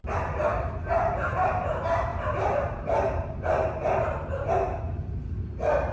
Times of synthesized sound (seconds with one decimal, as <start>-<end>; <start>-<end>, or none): 0.5-1.5; 2.1-4.5